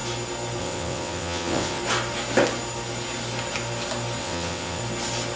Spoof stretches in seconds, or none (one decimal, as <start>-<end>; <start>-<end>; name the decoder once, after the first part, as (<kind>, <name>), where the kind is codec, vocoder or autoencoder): 0.6-1.8 (vocoder, WaveNeXt); 4.2-4.8